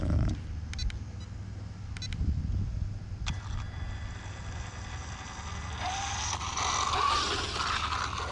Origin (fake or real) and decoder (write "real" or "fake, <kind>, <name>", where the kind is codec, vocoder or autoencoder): real